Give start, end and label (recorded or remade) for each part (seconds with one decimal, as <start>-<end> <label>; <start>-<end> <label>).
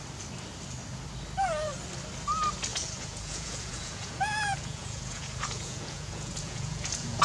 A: 0.0-2.7 recorded; 2.7-7.2 remade